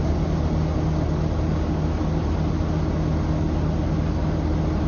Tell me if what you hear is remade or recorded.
recorded